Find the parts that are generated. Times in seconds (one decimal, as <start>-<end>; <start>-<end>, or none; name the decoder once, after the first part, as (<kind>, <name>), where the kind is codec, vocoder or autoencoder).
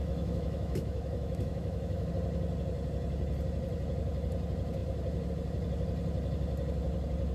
0.0-2.1 (autoencoder, DAC-VAE)